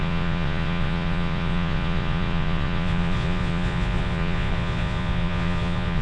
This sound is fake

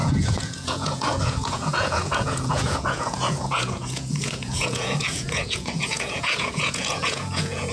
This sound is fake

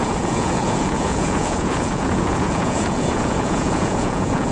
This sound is fake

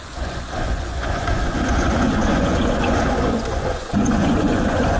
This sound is fake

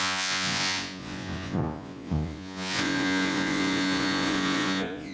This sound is fake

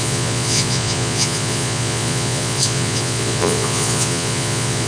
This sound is fake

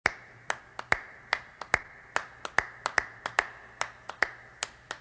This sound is real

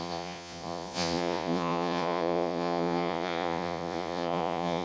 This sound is fake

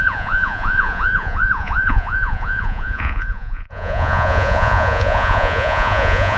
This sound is fake